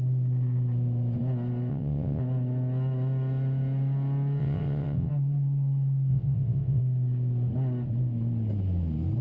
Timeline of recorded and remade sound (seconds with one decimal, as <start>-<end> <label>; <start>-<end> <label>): 0.0-1.7 recorded; 1.7-2.2 remade; 2.2-4.4 recorded; 4.4-5.1 remade; 5.1-6.1 recorded; 6.1-6.8 remade; 6.8-9.2 recorded